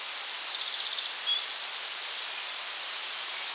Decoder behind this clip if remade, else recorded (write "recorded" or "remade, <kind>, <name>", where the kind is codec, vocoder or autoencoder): recorded